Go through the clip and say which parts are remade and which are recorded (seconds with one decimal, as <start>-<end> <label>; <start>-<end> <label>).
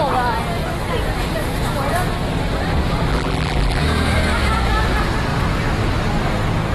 0.0-3.1 recorded; 3.1-3.8 remade; 3.8-6.7 recorded